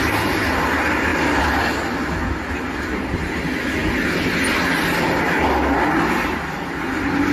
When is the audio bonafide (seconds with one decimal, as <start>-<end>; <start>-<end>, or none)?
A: 0.0-7.3